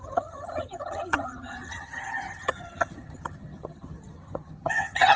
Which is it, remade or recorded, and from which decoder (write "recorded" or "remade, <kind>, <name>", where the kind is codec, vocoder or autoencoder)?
remade, vocoder, HiFi-GAN